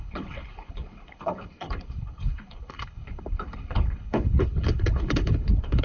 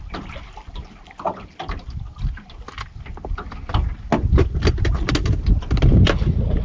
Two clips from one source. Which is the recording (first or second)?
second